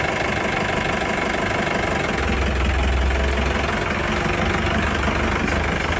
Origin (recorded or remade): recorded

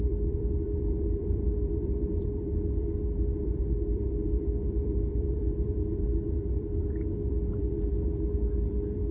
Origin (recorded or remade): remade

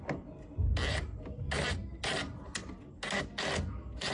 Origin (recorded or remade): recorded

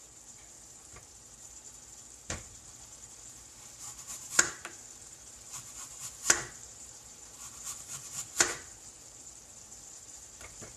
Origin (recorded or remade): remade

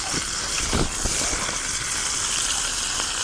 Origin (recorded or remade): recorded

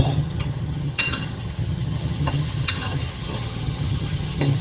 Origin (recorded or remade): remade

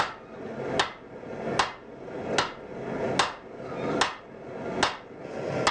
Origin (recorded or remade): recorded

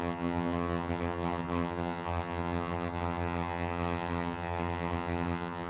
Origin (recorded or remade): remade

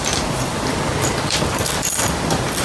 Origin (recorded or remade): remade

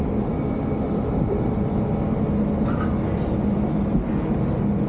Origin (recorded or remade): recorded